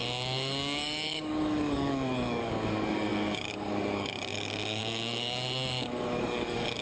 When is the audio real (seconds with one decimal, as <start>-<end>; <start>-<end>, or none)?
none